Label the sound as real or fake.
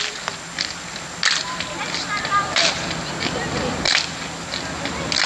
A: real